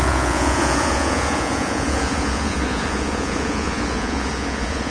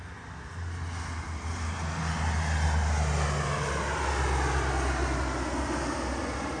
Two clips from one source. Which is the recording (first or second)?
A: second